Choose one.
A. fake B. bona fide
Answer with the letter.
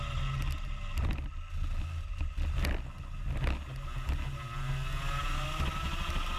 B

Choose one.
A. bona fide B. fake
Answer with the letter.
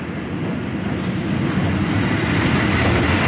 A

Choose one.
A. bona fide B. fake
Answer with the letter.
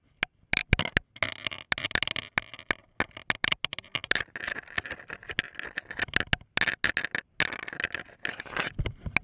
A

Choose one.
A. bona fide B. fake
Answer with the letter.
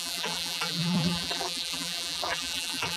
B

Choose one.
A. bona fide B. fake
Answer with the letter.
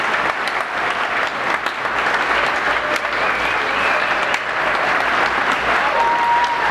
A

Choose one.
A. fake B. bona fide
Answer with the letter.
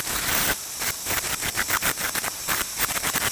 A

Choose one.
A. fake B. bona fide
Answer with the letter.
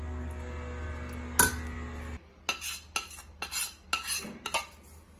B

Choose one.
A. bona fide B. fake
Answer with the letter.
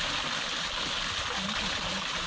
A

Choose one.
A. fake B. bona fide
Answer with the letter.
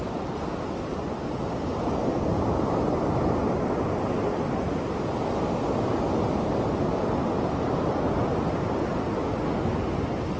B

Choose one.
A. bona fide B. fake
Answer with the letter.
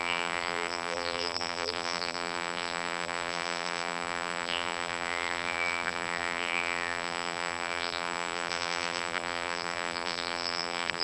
B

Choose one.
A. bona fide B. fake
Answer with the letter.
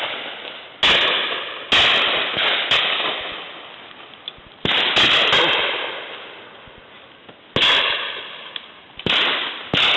A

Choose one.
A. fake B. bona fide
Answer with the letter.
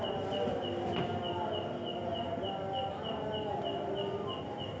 B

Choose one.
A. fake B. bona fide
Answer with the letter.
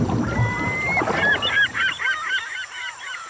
A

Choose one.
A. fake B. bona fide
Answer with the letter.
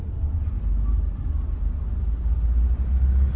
B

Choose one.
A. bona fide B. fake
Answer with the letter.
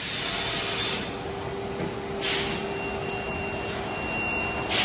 A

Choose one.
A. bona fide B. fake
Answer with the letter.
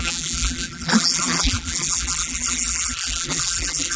B